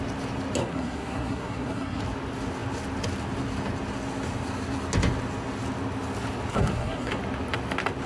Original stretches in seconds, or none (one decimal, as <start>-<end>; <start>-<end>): 0.0-0.6; 2.0-6.5; 7.2-8.1